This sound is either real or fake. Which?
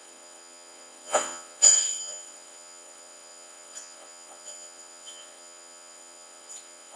fake